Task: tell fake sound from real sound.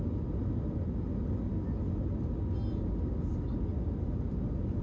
real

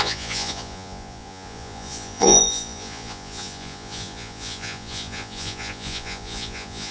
fake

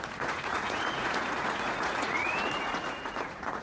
fake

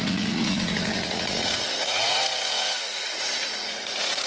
fake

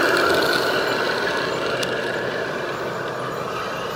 real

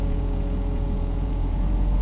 fake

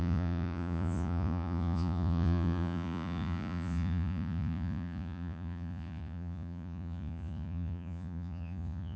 fake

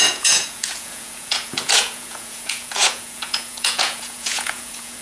fake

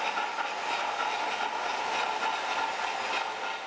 real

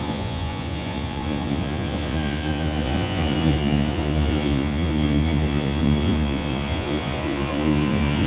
fake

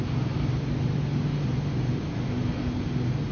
real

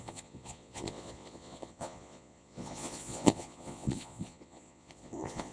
fake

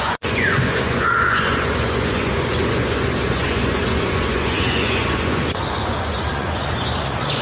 fake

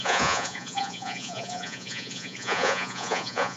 fake